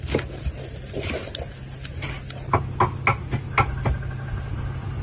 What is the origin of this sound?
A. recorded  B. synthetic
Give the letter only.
A